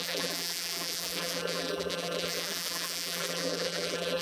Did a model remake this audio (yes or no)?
yes